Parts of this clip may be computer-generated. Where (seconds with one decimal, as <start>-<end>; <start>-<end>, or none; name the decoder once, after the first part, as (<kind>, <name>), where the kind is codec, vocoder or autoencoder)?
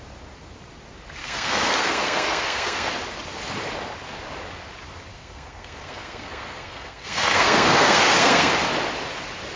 1.2-2.9 (codec, SNAC); 5.1-8.5